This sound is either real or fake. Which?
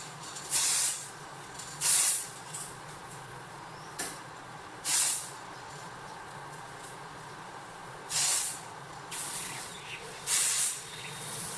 fake